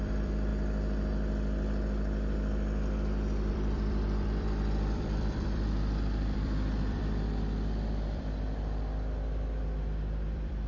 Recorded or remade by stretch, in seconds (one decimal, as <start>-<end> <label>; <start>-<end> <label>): 0.0-0.5 remade; 0.5-3.5 recorded; 3.5-10.7 remade